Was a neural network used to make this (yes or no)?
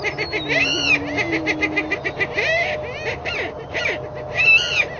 no